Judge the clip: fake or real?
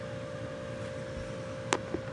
real